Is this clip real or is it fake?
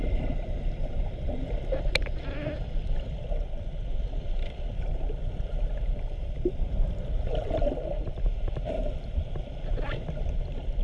fake